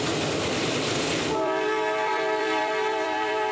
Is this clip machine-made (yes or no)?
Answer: yes